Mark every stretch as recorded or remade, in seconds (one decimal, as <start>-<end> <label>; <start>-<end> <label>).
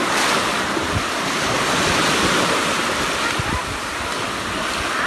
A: 0.0-5.1 recorded